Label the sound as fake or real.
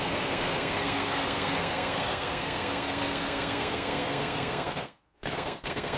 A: fake